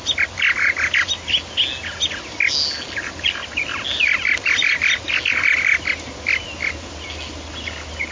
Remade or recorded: recorded